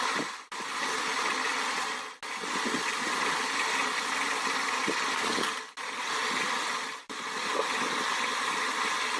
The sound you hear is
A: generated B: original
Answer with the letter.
B